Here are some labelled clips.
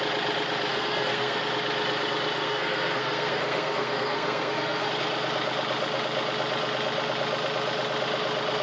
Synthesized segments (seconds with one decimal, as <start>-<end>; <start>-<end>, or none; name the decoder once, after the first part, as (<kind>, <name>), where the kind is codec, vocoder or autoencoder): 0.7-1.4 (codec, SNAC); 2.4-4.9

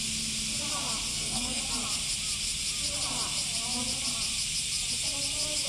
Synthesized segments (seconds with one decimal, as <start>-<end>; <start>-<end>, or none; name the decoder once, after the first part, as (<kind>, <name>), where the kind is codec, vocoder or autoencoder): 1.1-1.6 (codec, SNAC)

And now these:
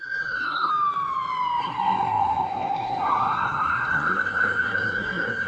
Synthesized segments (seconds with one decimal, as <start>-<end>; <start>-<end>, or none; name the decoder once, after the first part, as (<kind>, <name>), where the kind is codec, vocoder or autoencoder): 0.0-0.7 (codec, SNAC); 1.6-5.5

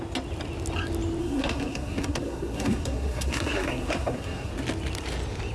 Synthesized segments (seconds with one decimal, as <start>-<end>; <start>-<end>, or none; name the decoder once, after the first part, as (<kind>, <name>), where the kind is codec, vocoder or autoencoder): 1.2-4.5 (codec, SNAC)